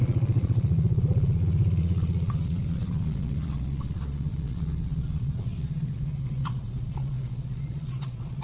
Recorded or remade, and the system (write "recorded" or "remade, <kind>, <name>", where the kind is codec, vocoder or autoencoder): remade, vocoder, Vocos